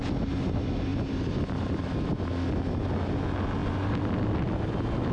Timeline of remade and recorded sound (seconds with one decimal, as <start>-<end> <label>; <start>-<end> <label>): 0.0-0.9 recorded; 0.9-1.8 remade; 1.8-3.6 recorded; 3.6-5.1 remade